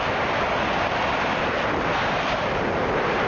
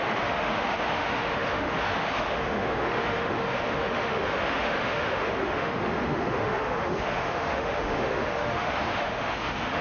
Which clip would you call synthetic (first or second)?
second